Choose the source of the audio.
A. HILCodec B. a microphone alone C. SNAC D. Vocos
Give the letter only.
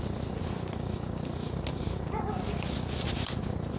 B